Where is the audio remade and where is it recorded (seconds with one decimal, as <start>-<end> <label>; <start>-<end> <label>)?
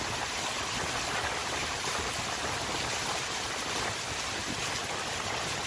0.0-1.4 recorded; 1.4-2.1 remade; 2.1-5.7 recorded